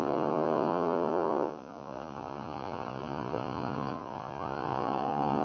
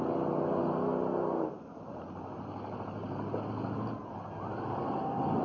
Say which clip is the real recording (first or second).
second